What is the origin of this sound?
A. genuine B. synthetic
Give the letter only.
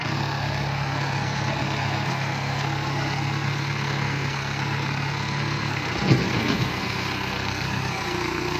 B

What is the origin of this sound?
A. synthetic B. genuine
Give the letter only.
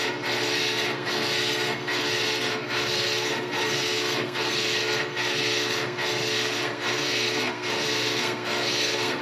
A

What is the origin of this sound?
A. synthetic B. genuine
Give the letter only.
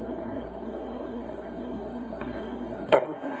A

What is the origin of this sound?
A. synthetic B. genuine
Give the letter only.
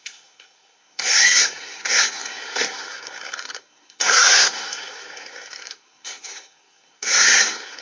A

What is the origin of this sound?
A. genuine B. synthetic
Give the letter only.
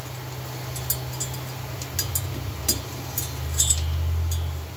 A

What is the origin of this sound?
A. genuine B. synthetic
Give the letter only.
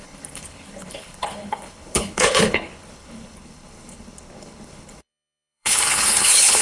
B